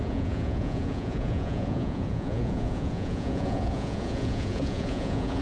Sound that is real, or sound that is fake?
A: fake